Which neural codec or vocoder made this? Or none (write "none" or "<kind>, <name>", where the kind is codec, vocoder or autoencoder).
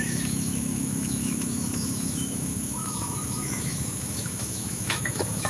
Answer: autoencoder, DAC-VAE